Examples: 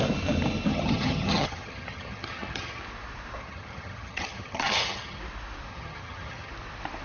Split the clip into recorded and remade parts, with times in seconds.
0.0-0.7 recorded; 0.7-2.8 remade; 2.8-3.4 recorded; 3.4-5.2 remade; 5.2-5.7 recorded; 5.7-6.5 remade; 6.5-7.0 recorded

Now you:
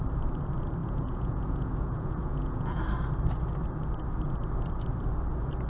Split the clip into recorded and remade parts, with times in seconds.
0.0-0.8 recorded; 0.8-2.8 remade; 2.8-5.7 recorded

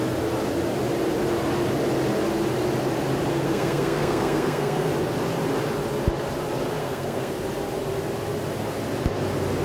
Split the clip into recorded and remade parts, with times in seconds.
0.0-3.3 recorded; 3.3-4.9 remade; 4.9-6.8 recorded; 6.8-7.3 remade; 7.3-9.6 recorded